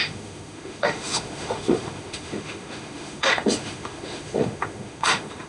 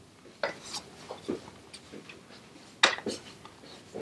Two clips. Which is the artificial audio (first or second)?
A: first